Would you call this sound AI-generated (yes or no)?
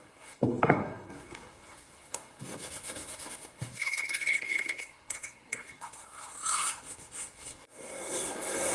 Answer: yes